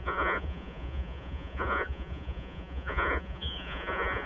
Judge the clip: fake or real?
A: fake